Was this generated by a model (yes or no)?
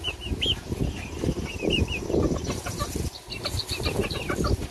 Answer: no